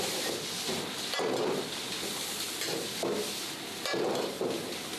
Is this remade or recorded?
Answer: recorded